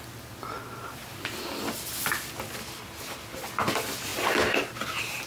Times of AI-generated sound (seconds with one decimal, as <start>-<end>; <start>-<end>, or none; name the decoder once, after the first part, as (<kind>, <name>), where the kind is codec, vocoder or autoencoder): none